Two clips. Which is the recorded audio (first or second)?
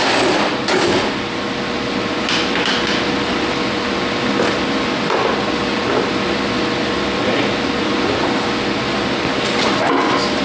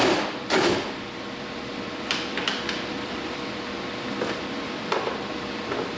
first